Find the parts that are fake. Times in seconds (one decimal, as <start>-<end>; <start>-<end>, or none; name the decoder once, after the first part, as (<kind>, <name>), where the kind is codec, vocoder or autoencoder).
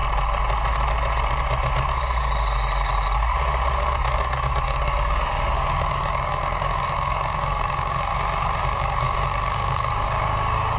3.8-8.1 (codec, DAC); 8.6-10.8